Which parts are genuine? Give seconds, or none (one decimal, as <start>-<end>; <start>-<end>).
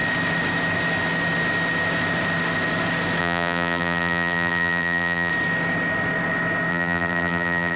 0.0-3.2; 5.3-6.7